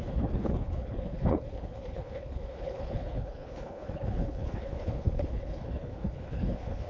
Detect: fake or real fake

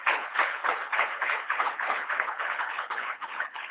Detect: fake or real fake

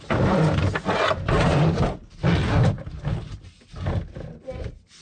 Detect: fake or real real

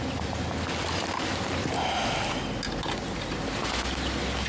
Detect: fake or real real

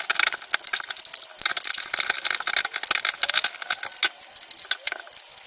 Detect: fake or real real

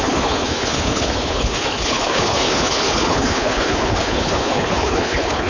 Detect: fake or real fake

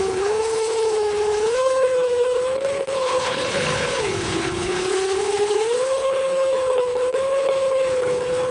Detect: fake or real fake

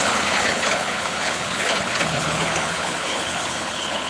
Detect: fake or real fake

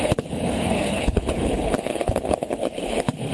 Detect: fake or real fake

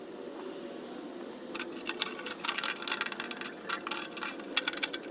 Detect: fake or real real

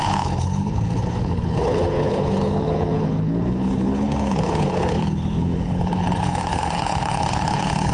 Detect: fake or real fake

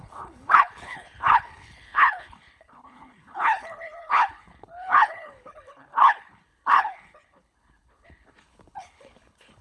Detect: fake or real fake